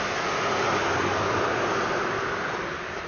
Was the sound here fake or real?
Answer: real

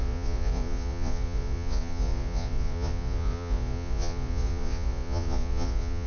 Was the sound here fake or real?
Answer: fake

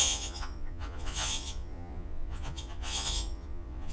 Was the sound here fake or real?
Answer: fake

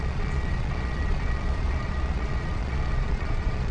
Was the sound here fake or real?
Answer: fake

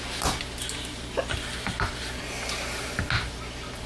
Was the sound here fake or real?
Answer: real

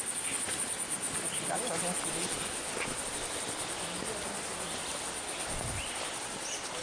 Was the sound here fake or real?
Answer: real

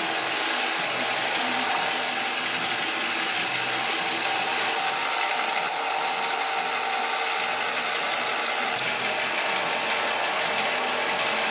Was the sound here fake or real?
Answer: real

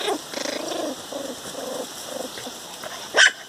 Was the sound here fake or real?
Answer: real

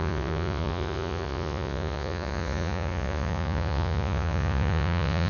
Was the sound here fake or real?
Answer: fake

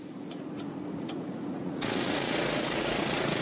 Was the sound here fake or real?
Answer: fake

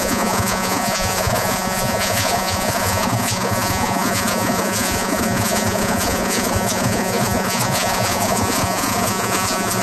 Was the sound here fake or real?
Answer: fake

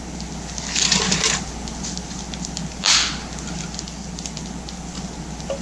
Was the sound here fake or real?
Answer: real